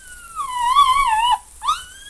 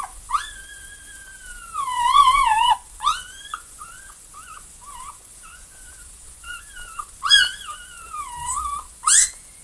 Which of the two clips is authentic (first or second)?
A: first